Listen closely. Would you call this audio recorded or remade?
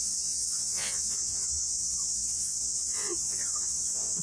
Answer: remade